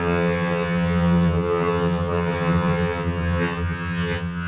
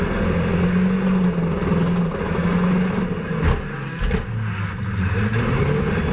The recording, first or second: second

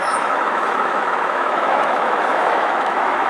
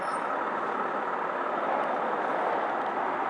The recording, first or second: second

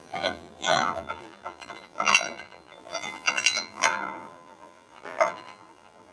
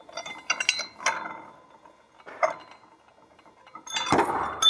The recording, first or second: second